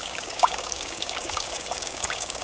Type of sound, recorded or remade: remade